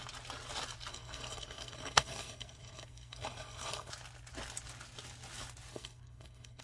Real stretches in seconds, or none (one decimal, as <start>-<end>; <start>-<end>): 0.0-0.9; 3.9-5.7